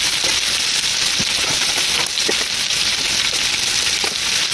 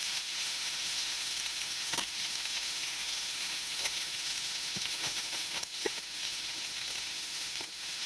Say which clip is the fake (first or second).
second